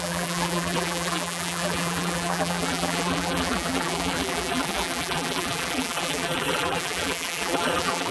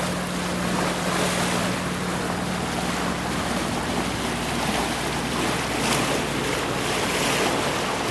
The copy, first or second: first